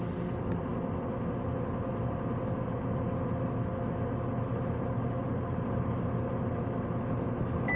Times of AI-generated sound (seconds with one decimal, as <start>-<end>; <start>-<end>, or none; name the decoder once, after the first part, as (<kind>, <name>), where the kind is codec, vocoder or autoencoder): none